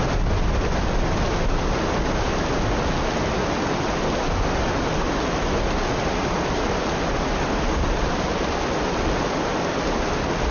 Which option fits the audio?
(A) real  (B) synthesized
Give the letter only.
A